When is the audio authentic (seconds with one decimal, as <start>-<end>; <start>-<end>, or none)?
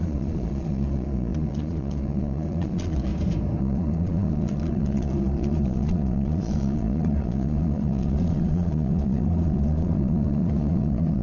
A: 3.1-3.6